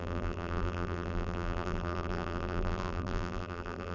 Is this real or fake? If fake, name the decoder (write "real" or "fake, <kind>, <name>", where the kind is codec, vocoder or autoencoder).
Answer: fake, vocoder, BigVGAN v2